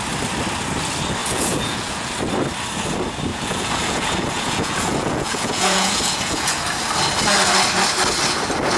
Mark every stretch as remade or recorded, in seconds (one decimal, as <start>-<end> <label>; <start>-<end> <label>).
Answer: 0.0-1.2 recorded; 1.2-2.1 remade; 2.1-3.3 recorded; 3.3-6.6 remade; 6.6-8.8 recorded